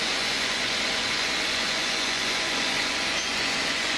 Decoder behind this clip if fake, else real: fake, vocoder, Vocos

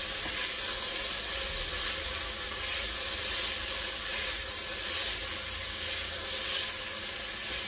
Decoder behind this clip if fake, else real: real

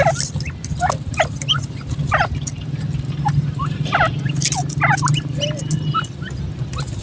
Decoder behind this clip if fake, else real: real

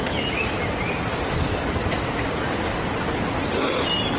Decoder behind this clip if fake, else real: real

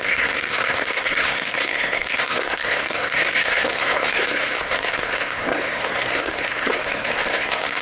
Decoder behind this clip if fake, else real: fake, codec, SNAC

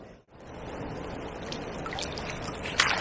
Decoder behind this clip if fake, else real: real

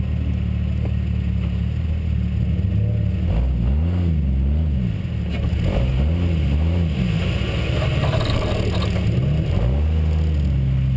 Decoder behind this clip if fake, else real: real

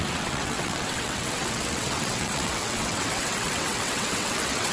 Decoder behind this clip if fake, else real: fake, vocoder, WaveNeXt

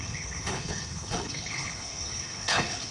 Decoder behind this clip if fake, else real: fake, codec, HILCodec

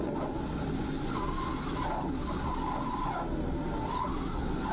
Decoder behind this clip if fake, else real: real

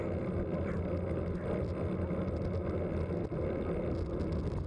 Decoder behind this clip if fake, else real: real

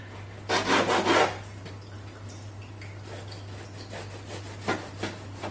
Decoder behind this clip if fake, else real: real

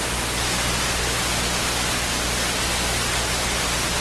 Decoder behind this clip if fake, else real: real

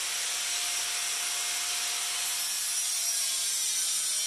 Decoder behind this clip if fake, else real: real